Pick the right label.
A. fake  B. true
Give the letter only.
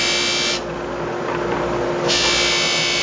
B